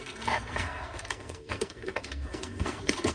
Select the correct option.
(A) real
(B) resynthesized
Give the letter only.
B